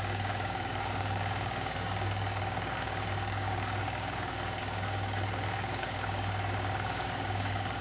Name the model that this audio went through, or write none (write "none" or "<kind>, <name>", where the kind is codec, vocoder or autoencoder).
codec, DAC